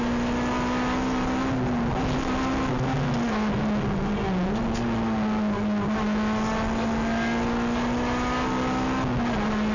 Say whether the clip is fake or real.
real